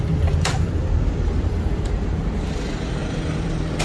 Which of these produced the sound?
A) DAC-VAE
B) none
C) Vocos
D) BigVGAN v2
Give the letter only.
D